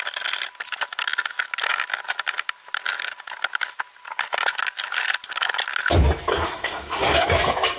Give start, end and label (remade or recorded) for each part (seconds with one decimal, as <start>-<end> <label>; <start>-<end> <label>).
0.0-6.3 recorded; 6.3-7.3 remade; 7.3-7.8 recorded